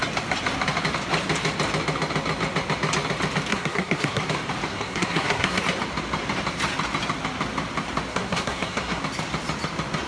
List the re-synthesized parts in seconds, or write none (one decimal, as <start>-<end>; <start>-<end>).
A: 3.5-4.2; 4.7-5.6; 8.1-9.0